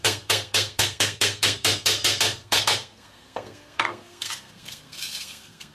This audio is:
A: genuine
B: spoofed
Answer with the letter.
B